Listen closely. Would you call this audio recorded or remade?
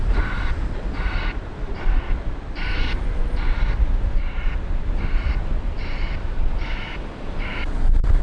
recorded